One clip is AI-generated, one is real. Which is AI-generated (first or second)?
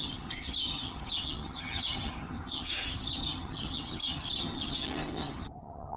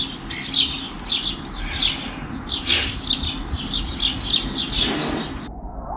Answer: first